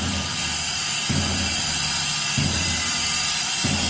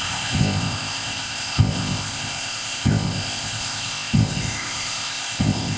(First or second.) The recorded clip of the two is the first